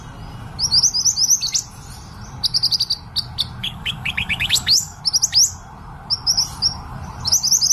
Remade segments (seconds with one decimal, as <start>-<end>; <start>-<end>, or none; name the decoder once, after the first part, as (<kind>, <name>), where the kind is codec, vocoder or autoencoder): 3.6-5.0 (codec, DAC)